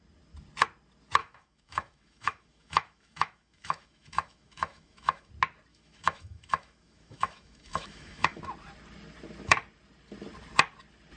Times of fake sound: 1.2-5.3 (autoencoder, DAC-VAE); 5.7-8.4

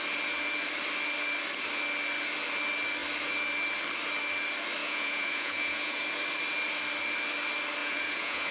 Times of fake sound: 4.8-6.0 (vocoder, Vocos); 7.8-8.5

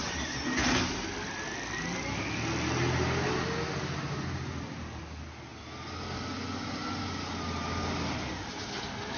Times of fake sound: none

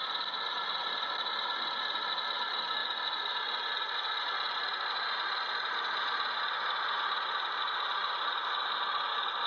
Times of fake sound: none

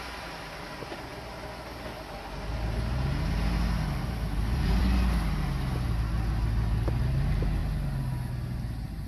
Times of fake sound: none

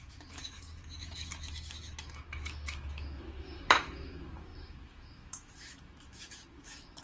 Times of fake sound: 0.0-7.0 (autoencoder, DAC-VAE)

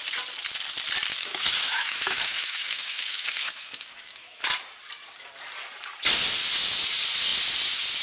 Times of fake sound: 1.1-4.5 (autoencoder, DAC-VAE)